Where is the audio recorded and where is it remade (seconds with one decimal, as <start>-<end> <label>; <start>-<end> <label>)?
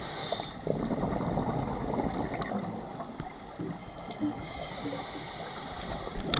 0.0-3.8 recorded; 3.8-4.7 remade; 4.7-6.4 recorded